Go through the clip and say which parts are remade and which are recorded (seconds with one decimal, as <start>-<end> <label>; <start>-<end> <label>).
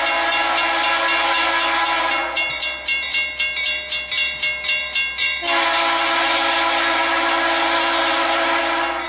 0.0-9.1 recorded